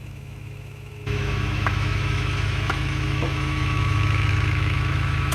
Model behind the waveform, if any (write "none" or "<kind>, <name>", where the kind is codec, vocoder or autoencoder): autoencoder, DAC-VAE